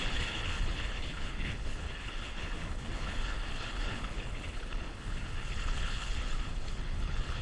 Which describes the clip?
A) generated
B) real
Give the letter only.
A